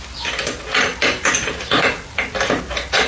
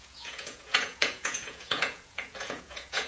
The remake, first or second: second